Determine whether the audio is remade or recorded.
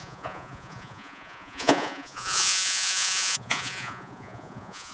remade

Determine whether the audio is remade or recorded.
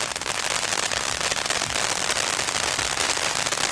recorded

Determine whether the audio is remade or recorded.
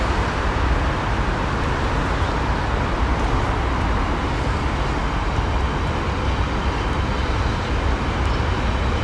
recorded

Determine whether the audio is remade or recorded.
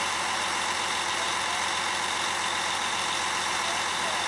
recorded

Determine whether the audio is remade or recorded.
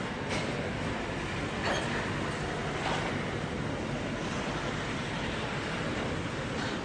recorded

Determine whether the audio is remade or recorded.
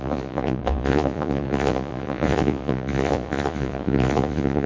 remade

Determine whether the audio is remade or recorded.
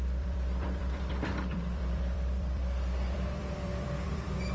remade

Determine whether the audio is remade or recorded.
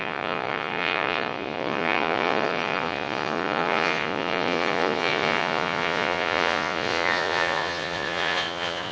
remade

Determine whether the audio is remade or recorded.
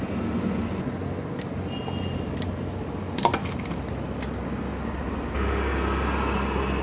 recorded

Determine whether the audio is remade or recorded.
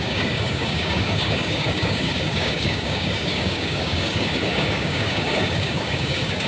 remade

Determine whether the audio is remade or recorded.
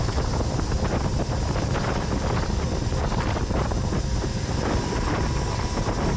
recorded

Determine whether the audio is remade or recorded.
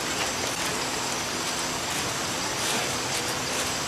recorded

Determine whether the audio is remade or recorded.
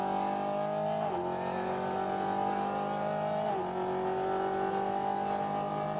recorded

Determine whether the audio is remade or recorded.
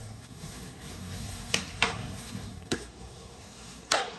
remade